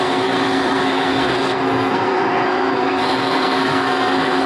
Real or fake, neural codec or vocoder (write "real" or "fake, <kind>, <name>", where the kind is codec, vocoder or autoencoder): fake, codec, SNAC